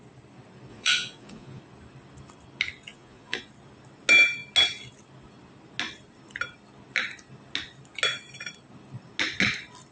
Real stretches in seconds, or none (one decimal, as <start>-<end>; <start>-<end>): 0.0-0.7; 1.6-2.9; 3.5-9.9